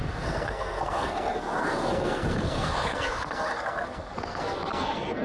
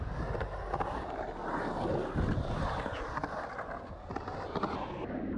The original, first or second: second